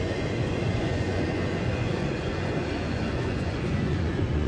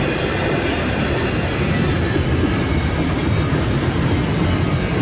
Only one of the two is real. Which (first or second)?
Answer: second